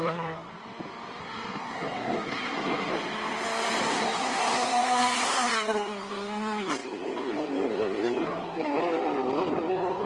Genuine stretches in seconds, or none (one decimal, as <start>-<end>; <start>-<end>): 0.5-1.2; 2.9-3.9; 8.8-9.7